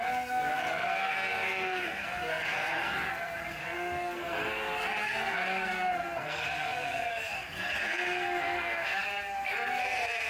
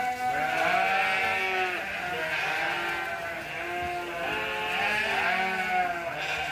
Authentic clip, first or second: second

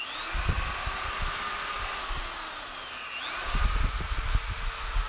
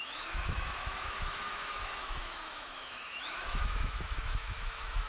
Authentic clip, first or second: first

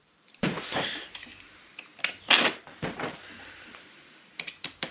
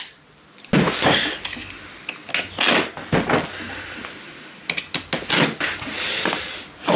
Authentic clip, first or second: second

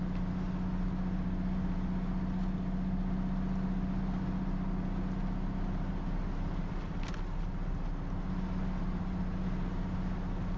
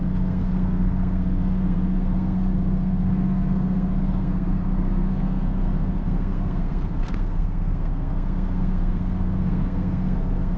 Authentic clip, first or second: first